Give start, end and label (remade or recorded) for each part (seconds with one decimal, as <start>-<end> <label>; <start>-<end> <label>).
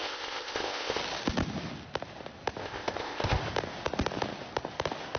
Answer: 0.0-1.0 remade; 1.0-2.6 recorded; 2.6-3.4 remade; 3.4-5.2 recorded